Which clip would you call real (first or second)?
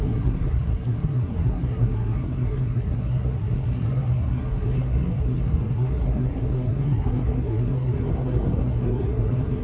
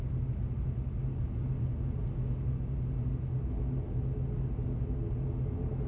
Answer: second